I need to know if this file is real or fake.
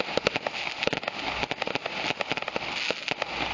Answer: real